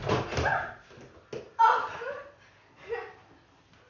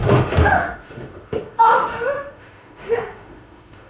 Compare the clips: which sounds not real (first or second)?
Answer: second